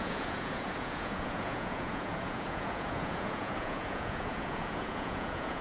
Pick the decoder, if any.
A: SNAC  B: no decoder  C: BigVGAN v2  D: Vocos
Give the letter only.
D